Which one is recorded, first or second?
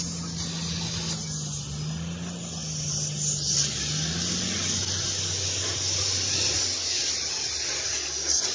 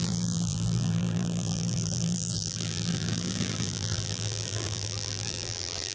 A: first